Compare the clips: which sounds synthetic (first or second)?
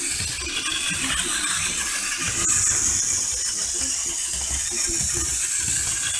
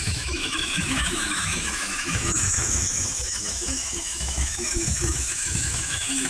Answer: second